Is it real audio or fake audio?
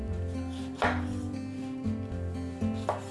real